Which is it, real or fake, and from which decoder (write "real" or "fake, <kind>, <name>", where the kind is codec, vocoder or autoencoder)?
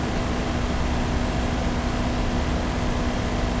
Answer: real